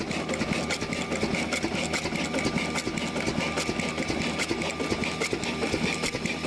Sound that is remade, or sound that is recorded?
recorded